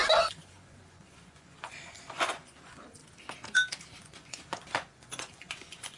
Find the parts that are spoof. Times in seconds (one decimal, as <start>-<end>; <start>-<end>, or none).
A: 0.0-3.0; 4.0-6.0